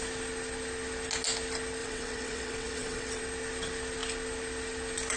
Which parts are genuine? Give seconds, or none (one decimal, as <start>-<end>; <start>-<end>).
0.0-1.8; 3.2-5.2